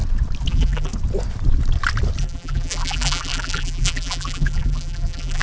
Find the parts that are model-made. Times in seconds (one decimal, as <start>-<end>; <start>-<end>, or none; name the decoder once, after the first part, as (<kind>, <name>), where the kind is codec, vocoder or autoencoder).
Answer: 0.5-0.9 (vocoder, BigVGAN v2); 2.2-5.4